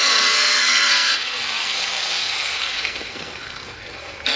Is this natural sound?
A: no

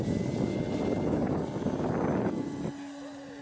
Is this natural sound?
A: yes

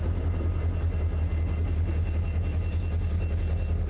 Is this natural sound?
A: yes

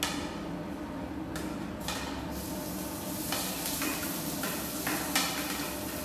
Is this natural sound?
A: yes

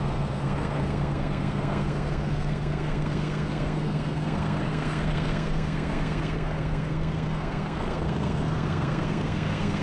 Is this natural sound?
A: no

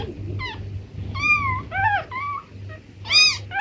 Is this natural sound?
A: yes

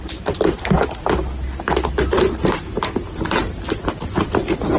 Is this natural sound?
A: yes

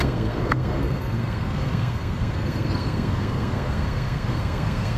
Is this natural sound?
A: no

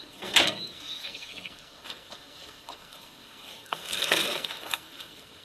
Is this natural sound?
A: no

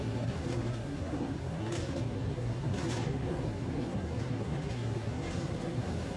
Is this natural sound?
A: no